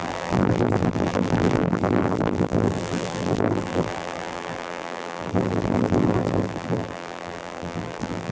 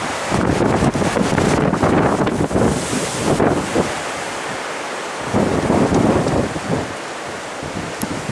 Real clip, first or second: second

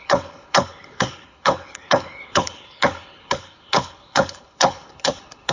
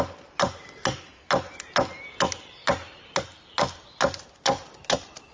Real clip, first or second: second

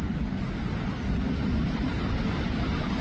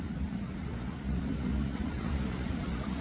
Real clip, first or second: first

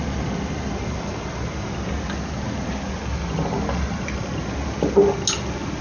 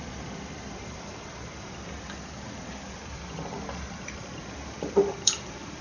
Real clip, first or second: first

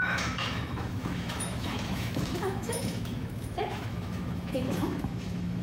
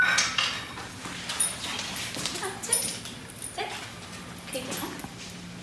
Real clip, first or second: second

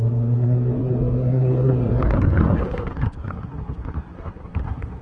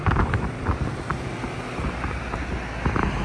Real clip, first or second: second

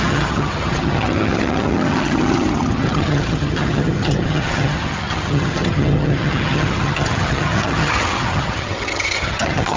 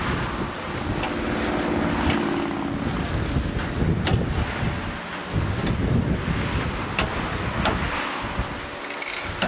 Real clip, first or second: second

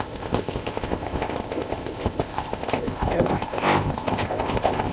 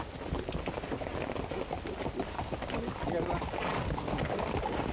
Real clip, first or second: second